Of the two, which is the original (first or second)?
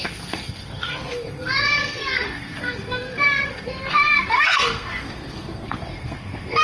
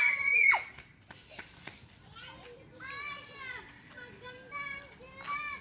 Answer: second